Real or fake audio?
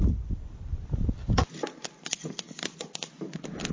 real